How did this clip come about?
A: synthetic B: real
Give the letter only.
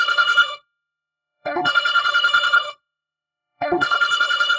A